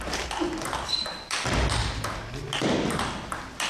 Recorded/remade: recorded